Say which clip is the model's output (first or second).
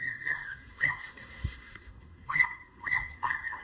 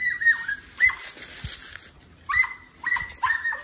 first